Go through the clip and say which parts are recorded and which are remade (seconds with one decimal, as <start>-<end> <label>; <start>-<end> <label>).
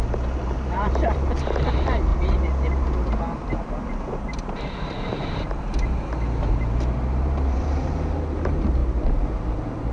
0.0-2.1 remade; 2.1-4.4 recorded; 4.4-9.9 remade